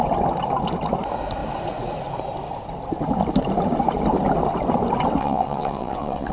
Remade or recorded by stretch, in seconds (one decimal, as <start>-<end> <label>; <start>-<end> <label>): 0.0-5.2 recorded; 5.2-6.3 remade